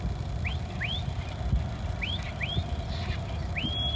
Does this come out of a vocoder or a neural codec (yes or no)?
no